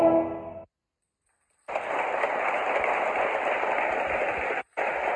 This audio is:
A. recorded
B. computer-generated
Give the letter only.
A